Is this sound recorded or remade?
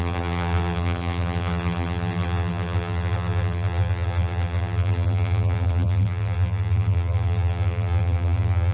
remade